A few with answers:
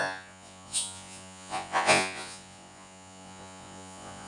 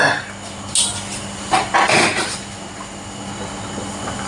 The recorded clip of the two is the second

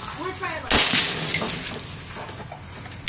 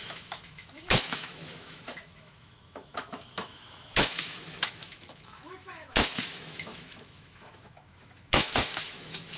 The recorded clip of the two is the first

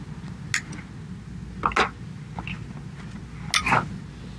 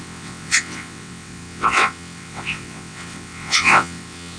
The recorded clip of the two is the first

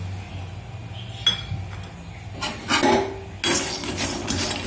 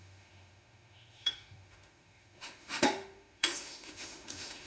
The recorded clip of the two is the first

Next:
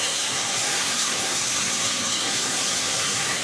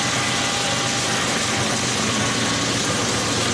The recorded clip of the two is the second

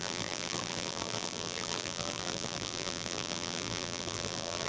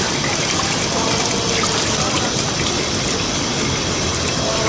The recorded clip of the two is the second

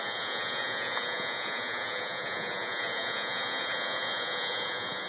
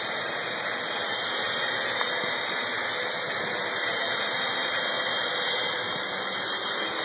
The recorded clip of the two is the second